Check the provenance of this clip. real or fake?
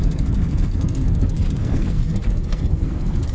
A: fake